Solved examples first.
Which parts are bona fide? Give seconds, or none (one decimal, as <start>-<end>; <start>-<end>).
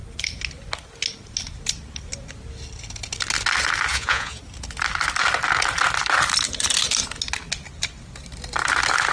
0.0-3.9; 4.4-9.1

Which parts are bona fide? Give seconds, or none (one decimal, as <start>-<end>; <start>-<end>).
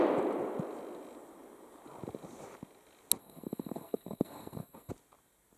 0.0-3.2; 4.9-5.6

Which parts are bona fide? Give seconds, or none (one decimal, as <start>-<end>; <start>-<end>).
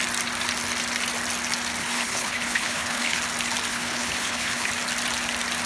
0.0-1.8; 3.2-3.7; 4.7-5.7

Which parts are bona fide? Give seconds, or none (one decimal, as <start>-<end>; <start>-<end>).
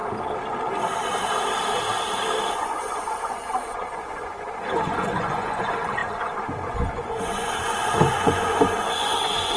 0.0-2.5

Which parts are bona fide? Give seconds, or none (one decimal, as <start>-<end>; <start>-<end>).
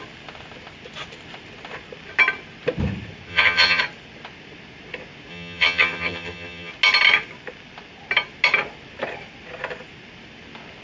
0.0-3.3; 3.8-5.3; 6.7-10.8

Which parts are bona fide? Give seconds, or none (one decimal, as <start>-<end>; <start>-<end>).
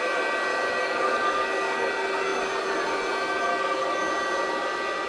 0.0-0.5; 1.9-3.5; 4.1-5.1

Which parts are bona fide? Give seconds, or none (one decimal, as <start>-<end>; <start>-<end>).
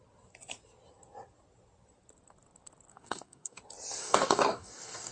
0.0-2.9; 3.6-4.0